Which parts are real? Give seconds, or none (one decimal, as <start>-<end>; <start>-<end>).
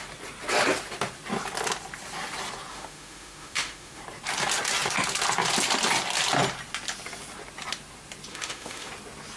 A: 0.0-2.7; 4.0-8.3; 8.9-9.4